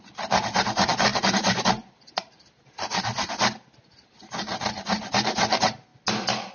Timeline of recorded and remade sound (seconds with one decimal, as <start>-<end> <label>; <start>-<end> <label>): 0.0-6.5 recorded